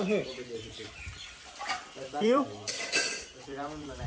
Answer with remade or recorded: remade